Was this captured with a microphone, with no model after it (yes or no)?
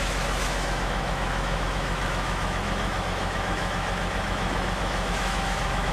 no